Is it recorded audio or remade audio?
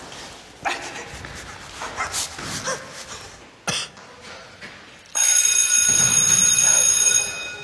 recorded